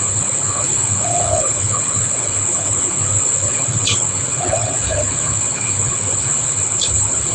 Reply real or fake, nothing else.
fake